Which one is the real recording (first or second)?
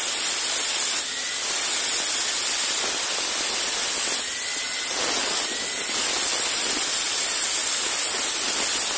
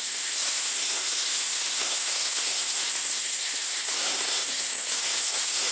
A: first